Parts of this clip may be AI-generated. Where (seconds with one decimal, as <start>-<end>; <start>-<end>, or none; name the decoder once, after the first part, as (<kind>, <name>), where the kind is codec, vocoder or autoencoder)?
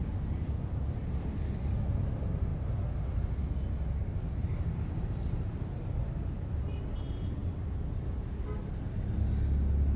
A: none